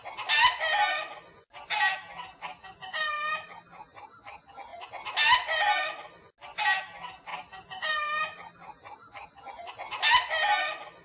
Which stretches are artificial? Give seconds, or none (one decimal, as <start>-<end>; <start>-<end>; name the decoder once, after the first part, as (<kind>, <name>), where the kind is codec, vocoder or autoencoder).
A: none